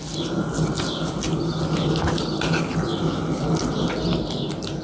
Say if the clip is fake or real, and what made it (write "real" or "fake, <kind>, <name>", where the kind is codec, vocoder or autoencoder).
real